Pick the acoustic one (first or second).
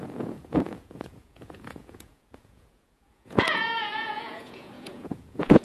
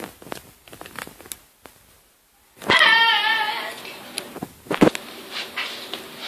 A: second